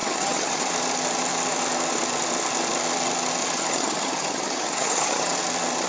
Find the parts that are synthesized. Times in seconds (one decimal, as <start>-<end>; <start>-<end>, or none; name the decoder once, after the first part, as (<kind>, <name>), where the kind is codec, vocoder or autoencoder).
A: 0.0-0.7 (vocoder, HiFi-GAN); 3.4-5.3